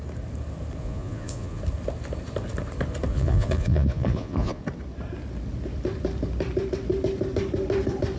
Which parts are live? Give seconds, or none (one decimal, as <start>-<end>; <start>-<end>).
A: 0.0-0.8; 1.6-3.1; 4.6-8.2